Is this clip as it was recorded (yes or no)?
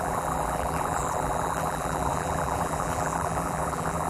no